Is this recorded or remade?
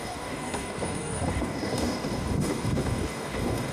remade